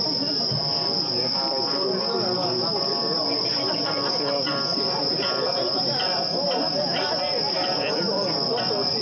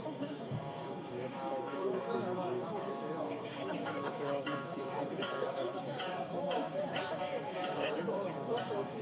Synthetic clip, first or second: second